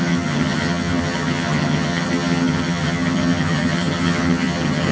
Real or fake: fake